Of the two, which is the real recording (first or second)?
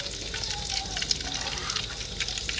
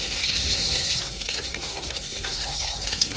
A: first